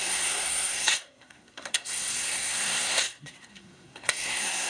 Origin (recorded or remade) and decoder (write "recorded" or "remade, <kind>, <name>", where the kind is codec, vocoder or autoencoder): remade, codec, SNAC